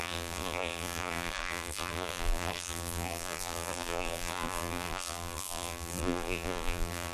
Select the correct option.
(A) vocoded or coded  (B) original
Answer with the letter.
A